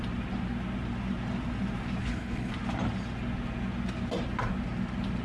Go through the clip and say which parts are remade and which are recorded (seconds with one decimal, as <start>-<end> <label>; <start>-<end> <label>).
0.0-2.0 recorded; 2.0-2.5 remade; 2.5-5.2 recorded